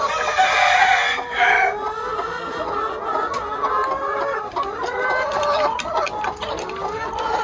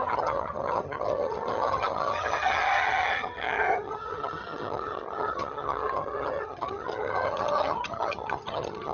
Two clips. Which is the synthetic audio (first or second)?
second